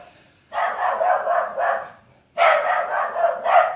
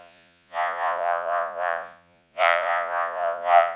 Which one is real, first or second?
first